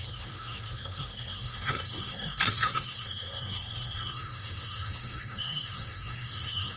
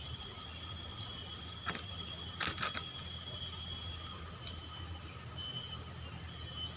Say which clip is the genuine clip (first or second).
second